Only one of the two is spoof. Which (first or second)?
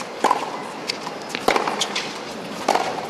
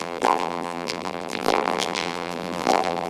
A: second